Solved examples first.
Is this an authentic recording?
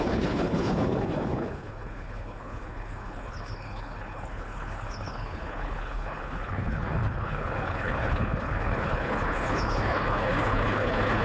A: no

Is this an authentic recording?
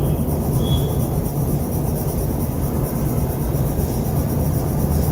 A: yes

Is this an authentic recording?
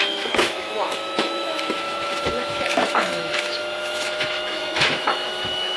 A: no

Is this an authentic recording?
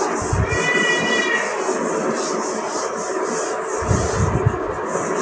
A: yes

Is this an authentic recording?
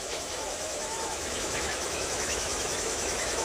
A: no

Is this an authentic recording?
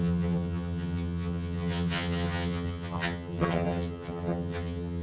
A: no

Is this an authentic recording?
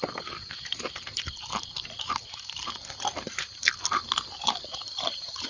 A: yes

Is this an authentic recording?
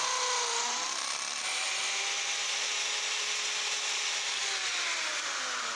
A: yes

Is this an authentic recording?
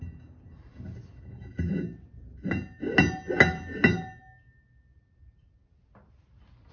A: yes